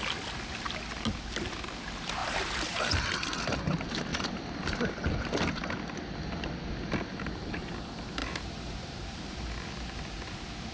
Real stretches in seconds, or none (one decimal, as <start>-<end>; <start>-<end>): 0.0-2.2; 2.9-4.1; 4.9-8.2; 9.4-10.7